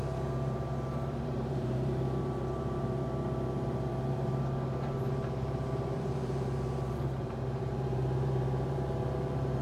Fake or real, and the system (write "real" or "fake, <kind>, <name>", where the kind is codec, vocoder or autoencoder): fake, vocoder, BigVGAN v2